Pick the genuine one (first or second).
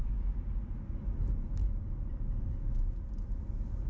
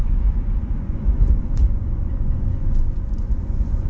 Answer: first